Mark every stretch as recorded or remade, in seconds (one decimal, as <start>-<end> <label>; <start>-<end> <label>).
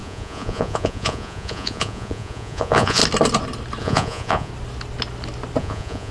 0.0-3.0 remade; 3.0-3.8 recorded; 3.8-4.5 remade; 4.5-5.6 recorded; 5.6-6.1 remade